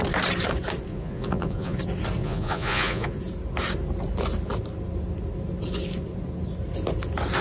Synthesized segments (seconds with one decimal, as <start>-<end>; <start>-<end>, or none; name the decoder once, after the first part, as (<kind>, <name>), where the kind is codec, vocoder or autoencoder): 0.9-1.8 (vocoder, Vocos); 2.2-3.2